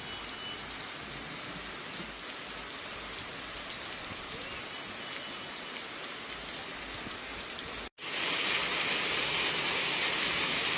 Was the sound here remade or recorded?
recorded